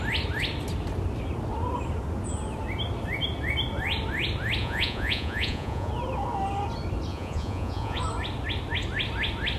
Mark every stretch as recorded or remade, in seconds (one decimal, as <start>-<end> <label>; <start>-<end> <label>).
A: 0.0-4.6 recorded; 4.6-5.9 remade; 5.9-7.1 recorded; 7.1-8.0 remade; 8.0-9.6 recorded